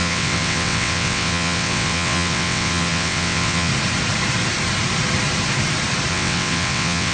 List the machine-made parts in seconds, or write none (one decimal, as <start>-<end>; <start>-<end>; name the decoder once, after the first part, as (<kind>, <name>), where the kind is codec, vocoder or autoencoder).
0.0-3.7 (vocoder, WaveNeXt); 6.1-7.1